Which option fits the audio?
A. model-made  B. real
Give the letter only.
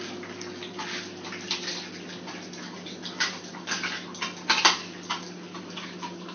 B